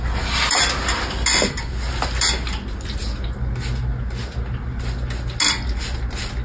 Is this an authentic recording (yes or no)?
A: yes